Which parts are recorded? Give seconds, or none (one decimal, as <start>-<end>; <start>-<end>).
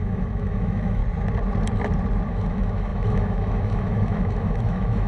1.0-2.3